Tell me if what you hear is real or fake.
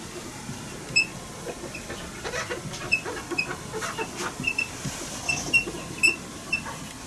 real